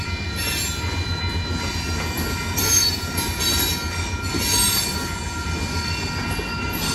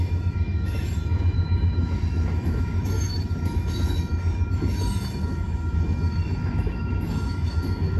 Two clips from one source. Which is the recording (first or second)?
first